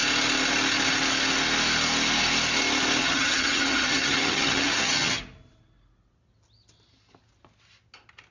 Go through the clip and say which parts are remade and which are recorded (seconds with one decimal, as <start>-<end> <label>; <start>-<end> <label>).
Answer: 0.0-3.0 recorded; 3.0-5.2 remade; 5.2-8.3 recorded